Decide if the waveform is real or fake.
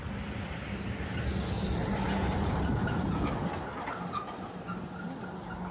real